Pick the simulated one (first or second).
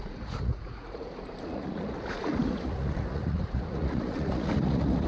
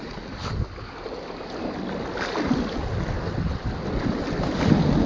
first